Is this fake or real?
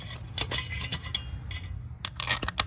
real